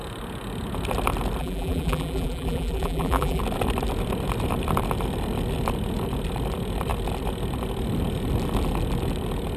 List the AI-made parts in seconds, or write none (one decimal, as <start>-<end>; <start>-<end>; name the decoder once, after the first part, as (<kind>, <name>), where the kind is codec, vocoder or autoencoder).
1.4-3.4 (vocoder, BigVGAN v2)